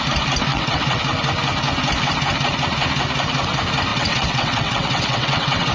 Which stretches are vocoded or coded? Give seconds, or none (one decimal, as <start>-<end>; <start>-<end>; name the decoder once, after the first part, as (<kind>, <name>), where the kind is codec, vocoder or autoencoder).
0.5-1.0 (vocoder, WaveNeXt); 3.9-5.7